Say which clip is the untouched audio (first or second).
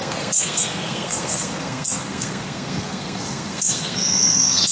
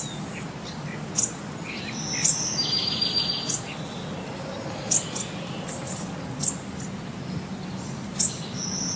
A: second